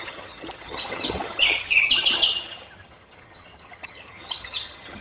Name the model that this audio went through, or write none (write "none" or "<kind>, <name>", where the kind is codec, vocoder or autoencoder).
vocoder, HiFi-GAN